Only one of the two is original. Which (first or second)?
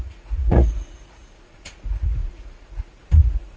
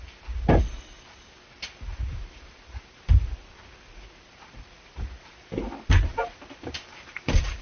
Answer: second